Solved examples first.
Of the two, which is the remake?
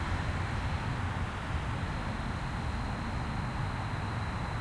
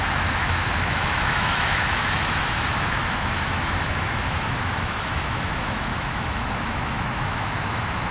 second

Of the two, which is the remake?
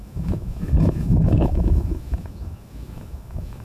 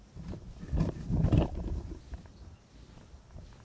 first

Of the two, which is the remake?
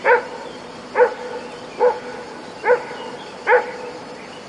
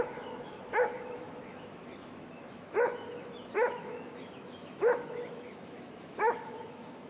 second